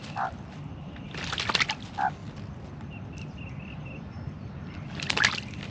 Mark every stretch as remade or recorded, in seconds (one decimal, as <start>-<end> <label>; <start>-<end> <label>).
0.0-5.7 recorded